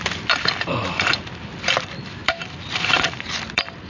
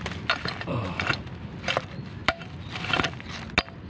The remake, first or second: first